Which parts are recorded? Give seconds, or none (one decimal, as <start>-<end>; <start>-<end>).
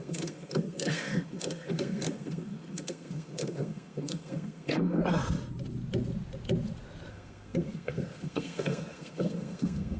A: 5.0-7.1